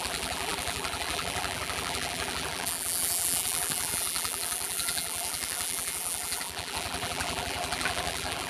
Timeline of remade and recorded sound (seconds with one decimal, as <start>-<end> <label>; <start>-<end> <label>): 0.0-8.5 remade